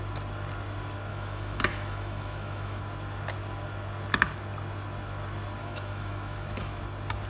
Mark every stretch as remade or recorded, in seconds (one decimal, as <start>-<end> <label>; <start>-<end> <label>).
0.0-1.1 recorded; 1.1-2.8 remade; 2.8-5.6 recorded; 5.6-6.8 remade; 6.8-7.3 recorded